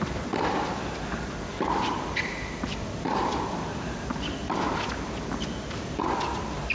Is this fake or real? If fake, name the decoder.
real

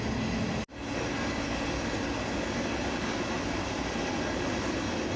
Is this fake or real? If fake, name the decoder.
real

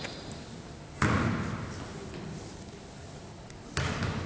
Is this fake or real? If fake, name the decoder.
real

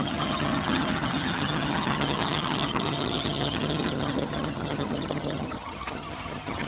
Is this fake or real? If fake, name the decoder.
fake, vocoder, HiFi-GAN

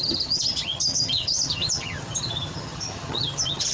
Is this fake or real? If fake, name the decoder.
fake, vocoder, HiFi-GAN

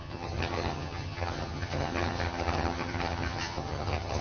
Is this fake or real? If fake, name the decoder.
fake, vocoder, HiFi-GAN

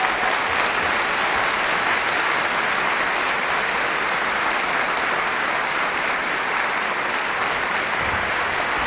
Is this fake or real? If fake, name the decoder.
real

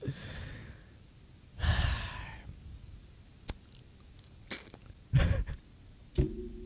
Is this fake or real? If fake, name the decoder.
real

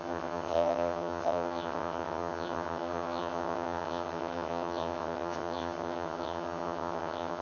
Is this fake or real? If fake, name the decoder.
fake, vocoder, HiFi-GAN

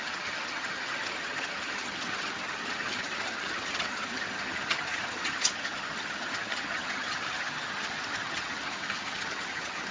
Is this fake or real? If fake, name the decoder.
fake, vocoder, HiFi-GAN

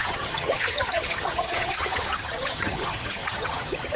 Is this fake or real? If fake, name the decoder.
fake, vocoder, HiFi-GAN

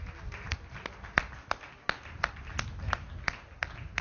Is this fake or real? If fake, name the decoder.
real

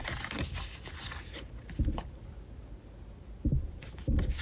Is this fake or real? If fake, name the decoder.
real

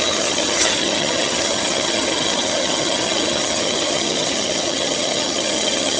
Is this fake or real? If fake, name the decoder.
fake, vocoder, HiFi-GAN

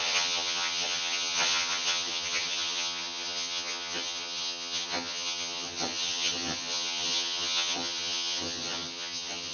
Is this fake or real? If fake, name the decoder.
fake, vocoder, HiFi-GAN